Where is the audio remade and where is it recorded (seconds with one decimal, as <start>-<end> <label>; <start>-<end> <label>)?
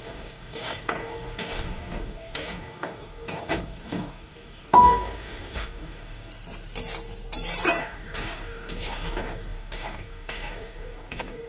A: 0.0-6.3 remade; 6.3-7.8 recorded; 7.8-11.5 remade